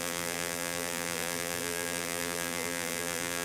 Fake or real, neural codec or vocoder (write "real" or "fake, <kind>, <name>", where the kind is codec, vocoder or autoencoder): fake, vocoder, BigVGAN v2